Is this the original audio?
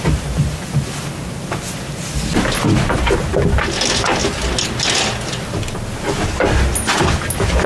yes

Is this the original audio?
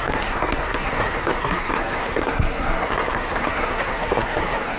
no